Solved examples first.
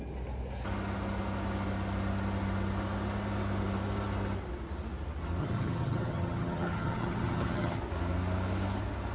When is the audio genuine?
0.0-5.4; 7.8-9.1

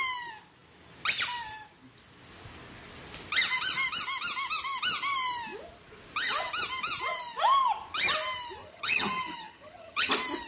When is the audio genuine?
0.0-8.6; 10.1-10.5

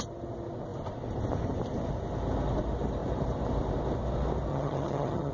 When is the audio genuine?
0.0-4.5

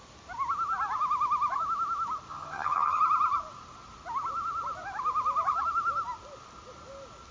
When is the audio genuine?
0.0-2.3; 3.0-7.3

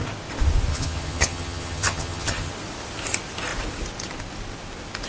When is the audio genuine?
0.0-0.7; 2.5-5.1

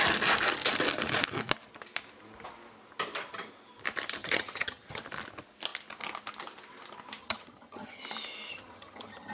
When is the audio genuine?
0.0-4.2; 5.0-7.2; 8.0-8.5

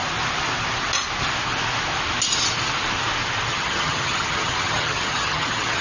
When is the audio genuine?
0.0-3.5